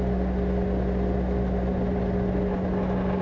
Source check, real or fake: real